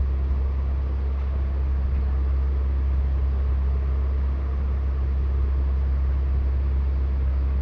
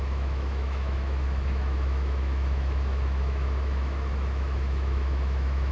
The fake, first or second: second